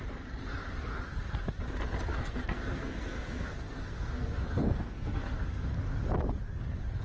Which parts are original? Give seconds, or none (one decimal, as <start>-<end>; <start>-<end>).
0.0-2.1; 5.6-7.0